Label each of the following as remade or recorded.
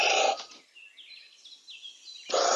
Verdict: recorded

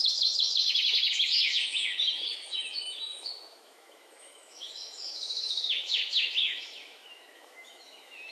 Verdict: remade